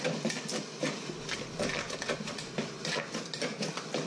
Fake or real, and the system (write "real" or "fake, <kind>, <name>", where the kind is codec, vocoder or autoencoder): real